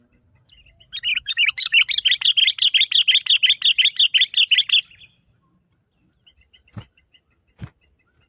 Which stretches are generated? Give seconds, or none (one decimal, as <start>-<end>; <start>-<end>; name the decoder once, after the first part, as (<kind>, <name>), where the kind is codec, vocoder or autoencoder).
1.1-1.8 (autoencoder, DAC-VAE)